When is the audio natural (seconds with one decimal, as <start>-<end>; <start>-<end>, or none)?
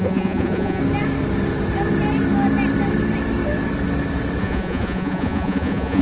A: 0.8-4.4